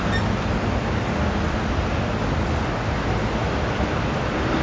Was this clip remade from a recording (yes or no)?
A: no